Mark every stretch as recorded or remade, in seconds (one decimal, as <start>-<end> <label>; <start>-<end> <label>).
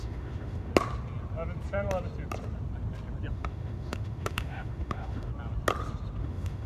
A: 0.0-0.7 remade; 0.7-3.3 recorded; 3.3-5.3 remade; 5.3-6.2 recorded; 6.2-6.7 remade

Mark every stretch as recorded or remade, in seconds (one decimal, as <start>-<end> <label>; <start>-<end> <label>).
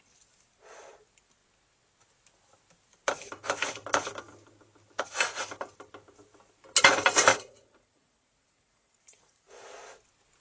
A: 0.0-7.3 recorded; 7.3-9.5 remade; 9.5-10.4 recorded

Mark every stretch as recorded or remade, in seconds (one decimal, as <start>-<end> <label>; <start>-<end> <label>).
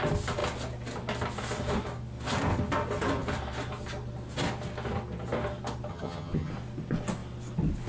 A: 0.0-5.9 recorded; 5.9-6.5 remade; 6.5-7.9 recorded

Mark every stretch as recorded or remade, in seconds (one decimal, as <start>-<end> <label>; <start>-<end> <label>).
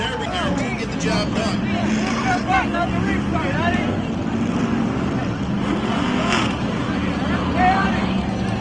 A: 0.0-8.6 recorded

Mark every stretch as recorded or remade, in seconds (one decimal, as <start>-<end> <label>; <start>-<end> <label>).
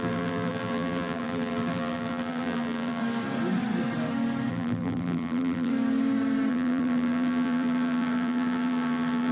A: 0.0-3.0 remade; 3.0-4.5 recorded; 4.5-5.7 remade; 5.7-6.5 recorded; 6.5-9.3 remade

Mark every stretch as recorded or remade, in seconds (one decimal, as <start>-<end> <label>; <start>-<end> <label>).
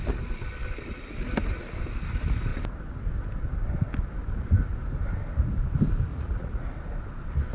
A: 0.0-6.1 recorded; 6.1-6.7 remade; 6.7-7.5 recorded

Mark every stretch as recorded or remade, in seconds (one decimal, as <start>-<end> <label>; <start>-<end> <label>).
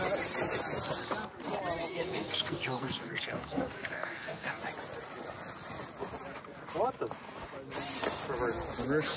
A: 0.0-1.9 recorded; 1.9-4.6 remade; 4.6-9.2 recorded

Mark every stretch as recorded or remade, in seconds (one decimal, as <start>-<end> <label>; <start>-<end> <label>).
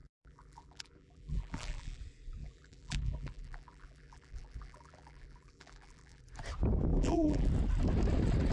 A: 0.0-2.0 remade; 2.0-2.4 recorded; 2.4-6.2 remade; 6.2-6.9 recorded; 6.9-7.5 remade; 7.5-8.5 recorded